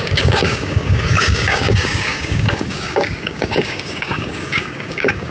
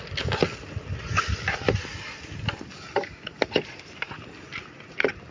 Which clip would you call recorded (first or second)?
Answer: second